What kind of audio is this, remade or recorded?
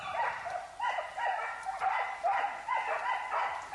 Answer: recorded